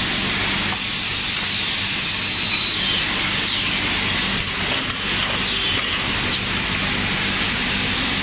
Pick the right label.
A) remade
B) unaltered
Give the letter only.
B